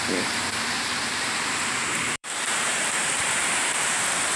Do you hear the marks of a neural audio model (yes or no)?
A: yes